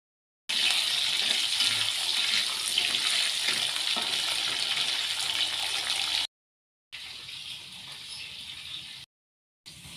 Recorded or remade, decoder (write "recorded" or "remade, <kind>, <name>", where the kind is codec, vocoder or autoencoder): recorded